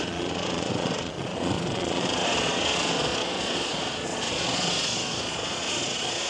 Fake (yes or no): yes